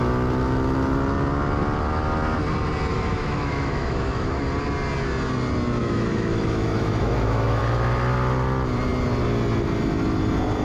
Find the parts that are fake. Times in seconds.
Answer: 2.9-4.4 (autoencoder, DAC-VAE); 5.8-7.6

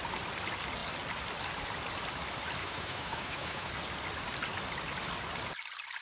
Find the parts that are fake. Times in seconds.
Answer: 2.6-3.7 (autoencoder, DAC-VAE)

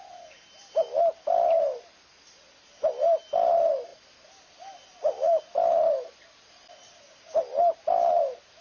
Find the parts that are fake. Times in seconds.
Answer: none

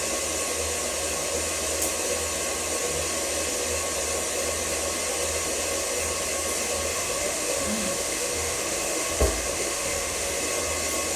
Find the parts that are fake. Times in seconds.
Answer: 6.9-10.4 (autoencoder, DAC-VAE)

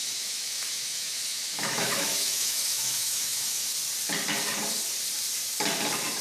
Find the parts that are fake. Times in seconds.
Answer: 0.0-3.7 (autoencoder, DAC-VAE)